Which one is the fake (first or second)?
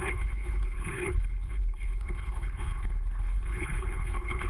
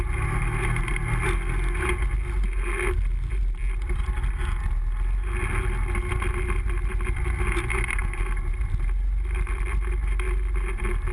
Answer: first